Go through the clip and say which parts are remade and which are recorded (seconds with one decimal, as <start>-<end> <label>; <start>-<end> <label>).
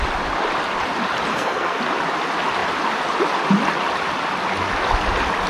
0.0-1.3 recorded; 1.3-1.8 remade; 1.8-5.5 recorded